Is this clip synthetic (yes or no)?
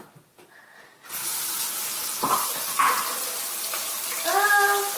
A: no